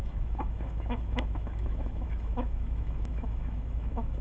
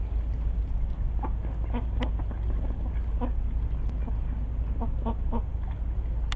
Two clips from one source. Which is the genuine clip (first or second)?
second